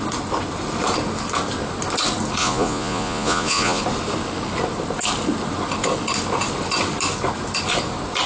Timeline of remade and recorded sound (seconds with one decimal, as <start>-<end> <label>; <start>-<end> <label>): 0.0-2.4 recorded; 2.4-3.8 remade; 3.8-8.3 recorded